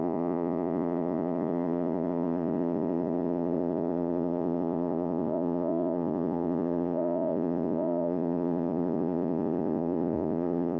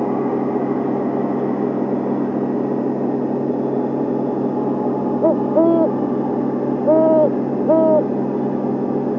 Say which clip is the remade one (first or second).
first